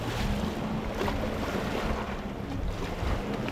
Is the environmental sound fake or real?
real